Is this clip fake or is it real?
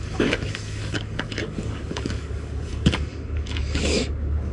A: fake